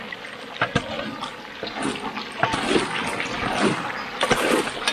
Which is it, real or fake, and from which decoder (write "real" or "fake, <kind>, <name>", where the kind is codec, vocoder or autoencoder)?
real